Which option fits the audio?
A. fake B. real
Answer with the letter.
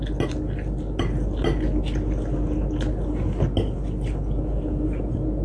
B